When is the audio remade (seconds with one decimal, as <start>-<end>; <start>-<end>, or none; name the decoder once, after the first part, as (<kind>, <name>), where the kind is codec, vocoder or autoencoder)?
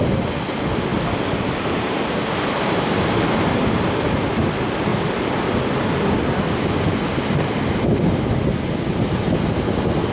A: none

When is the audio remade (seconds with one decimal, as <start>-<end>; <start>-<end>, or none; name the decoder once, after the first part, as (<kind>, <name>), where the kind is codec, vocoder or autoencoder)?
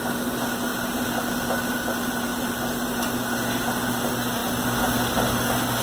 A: 0.7-1.2 (vocoder, BigVGAN v2); 2.3-3.0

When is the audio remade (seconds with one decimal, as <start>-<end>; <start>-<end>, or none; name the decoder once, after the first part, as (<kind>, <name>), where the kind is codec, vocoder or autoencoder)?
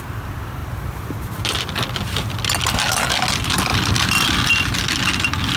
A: none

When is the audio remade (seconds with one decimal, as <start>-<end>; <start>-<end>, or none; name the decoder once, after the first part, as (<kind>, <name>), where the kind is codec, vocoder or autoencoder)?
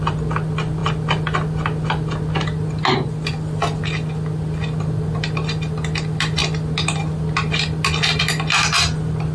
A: none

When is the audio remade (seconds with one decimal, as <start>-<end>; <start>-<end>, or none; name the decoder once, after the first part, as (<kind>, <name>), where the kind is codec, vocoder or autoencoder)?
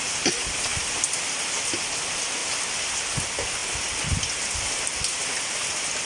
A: 0.7-1.2 (vocoder, BigVGAN v2)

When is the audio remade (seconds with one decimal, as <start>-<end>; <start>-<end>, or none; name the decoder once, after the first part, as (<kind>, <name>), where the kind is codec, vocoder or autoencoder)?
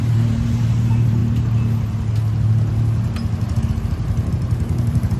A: 0.0-1.2 (vocoder, BigVGAN v2); 4.3-5.2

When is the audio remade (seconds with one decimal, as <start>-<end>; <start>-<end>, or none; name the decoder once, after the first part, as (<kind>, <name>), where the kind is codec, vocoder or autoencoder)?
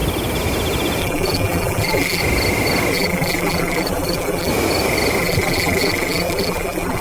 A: 1.0-2.2 (vocoder, BigVGAN v2); 2.9-4.5; 5.2-7.0